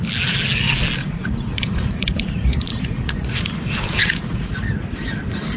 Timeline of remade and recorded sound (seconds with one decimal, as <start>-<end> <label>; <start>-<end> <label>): 0.0-1.0 recorded; 1.0-3.4 remade; 3.4-4.0 recorded; 4.0-4.5 remade; 4.5-5.6 recorded